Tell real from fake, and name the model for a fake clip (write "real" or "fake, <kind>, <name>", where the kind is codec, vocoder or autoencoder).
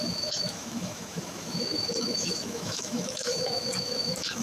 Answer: fake, autoencoder, DAC-VAE